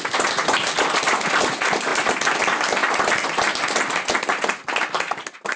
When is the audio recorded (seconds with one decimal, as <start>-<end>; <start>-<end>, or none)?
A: 0.0-5.6